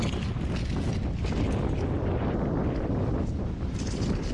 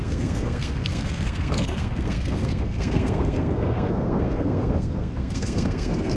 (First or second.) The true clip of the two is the first